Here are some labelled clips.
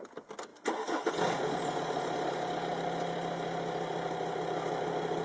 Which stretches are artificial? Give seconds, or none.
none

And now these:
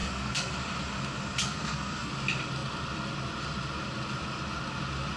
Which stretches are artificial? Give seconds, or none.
0.0-0.5; 1.4-2.1

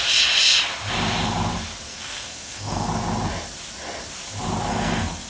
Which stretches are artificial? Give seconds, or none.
1.9-2.9; 4.7-5.3

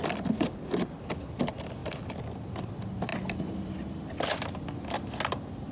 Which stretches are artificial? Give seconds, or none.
none

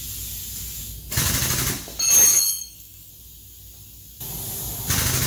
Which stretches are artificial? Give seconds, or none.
2.3-3.1

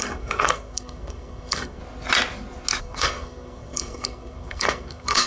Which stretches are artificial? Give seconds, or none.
0.0-1.8; 2.8-5.3

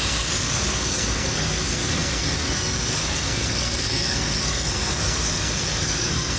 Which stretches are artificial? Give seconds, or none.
0.0-6.4